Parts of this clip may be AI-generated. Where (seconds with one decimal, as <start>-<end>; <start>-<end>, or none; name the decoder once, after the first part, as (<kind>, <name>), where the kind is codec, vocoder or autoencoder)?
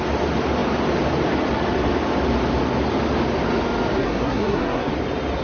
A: 4.0-4.9 (codec, SNAC)